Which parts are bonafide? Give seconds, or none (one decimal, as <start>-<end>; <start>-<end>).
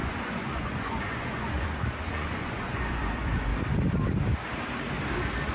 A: 3.5-5.5